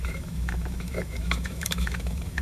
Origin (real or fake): fake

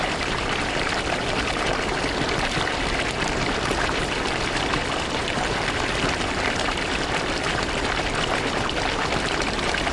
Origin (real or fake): fake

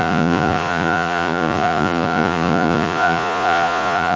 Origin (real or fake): fake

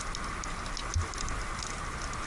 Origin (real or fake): real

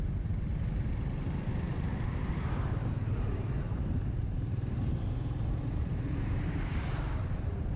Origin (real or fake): fake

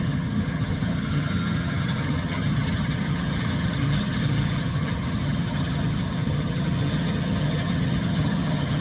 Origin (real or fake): fake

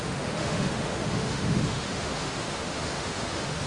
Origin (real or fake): fake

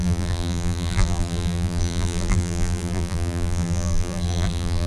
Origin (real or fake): fake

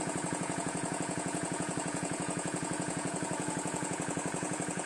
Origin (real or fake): fake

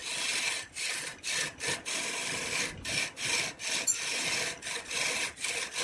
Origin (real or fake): real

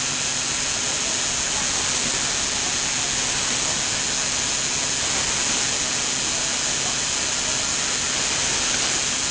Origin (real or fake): real